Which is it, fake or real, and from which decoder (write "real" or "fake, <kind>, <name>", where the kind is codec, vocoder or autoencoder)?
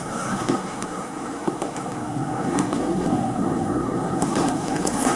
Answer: fake, codec, SNAC